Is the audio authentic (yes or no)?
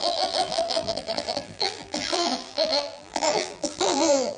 no